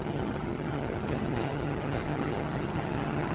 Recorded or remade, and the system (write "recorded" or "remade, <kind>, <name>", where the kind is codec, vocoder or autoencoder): remade, vocoder, HiFi-GAN